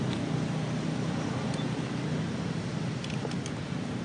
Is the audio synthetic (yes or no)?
no